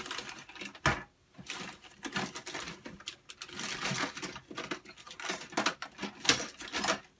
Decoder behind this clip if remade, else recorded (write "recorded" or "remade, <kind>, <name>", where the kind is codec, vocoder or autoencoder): recorded